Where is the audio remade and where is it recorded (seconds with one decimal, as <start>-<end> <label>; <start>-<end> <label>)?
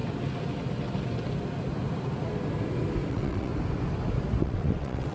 0.0-3.1 recorded; 3.1-3.5 remade; 3.5-4.4 recorded; 4.4-5.1 remade